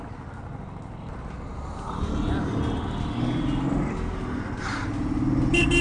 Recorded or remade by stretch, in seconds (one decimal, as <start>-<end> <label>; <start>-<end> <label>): 0.0-5.8 recorded